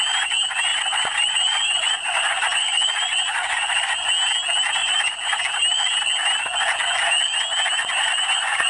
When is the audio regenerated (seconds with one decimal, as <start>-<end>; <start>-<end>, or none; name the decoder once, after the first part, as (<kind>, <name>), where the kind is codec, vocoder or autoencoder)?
0.7-3.9 (vocoder, Vocos); 4.8-5.4; 7.8-8.7